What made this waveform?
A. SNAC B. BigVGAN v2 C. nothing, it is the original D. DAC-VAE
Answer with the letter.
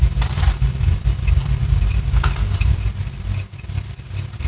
B